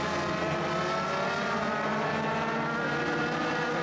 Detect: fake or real real